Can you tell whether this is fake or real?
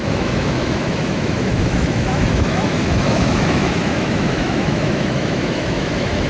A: fake